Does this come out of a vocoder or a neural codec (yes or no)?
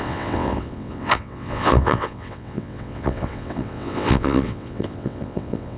yes